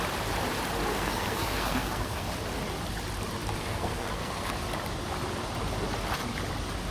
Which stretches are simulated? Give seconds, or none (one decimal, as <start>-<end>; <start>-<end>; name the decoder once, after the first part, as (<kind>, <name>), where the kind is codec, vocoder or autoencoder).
0.9-2.3 (codec, SNAC); 3.6-4.5